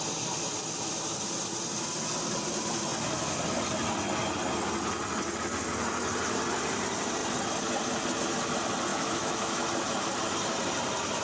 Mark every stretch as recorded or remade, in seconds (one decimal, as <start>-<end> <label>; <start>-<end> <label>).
0.0-8.9 recorded; 8.9-9.6 remade; 9.6-11.2 recorded